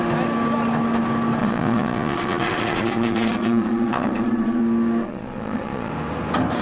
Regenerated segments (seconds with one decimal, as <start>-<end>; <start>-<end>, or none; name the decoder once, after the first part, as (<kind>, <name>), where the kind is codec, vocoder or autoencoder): 1.4-4.6 (vocoder, Vocos); 5.0-5.9